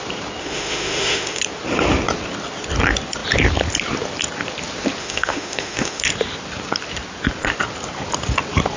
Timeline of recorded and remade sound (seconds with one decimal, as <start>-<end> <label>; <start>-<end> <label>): 0.0-0.4 recorded; 0.4-1.4 remade; 1.4-5.0 recorded; 5.0-6.0 remade; 6.0-8.8 recorded